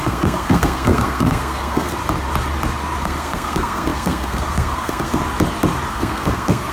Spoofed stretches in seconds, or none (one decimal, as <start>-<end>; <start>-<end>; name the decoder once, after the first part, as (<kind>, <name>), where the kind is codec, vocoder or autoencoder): 0.0-1.9 (codec, SNAC); 3.0-5.2; 5.9-6.7